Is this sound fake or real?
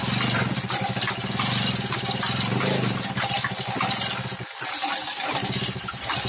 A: real